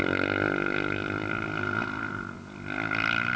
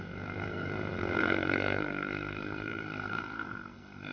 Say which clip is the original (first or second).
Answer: first